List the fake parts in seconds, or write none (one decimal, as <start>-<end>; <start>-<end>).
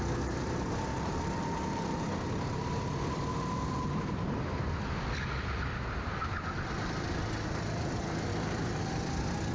0.9-2.1; 3.3-4.8; 5.7-6.2; 8.3-8.8